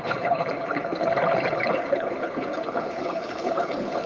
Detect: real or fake fake